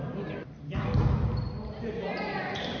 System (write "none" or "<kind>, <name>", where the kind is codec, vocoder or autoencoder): none